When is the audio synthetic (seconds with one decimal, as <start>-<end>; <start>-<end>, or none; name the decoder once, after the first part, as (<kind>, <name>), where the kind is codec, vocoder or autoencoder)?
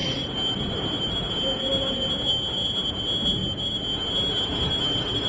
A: none